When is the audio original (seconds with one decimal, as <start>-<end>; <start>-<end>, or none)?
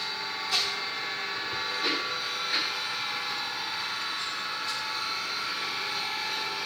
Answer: 0.0-6.7